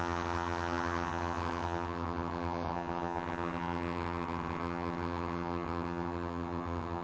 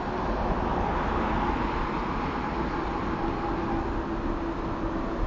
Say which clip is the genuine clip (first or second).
second